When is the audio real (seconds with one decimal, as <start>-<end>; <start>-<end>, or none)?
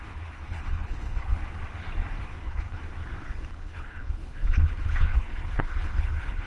1.4-2.2; 2.8-3.5